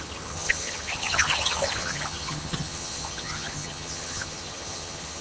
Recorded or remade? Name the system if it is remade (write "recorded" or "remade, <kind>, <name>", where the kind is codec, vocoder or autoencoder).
remade, vocoder, HiFi-GAN